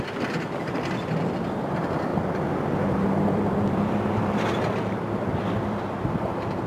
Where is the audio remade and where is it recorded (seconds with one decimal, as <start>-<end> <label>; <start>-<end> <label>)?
0.0-6.7 remade